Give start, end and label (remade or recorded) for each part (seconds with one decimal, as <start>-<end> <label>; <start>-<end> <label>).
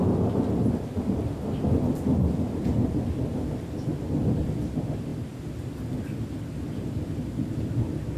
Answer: 0.0-8.2 recorded